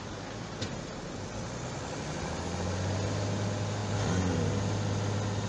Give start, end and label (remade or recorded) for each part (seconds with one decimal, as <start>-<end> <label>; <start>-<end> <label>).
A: 0.0-5.5 recorded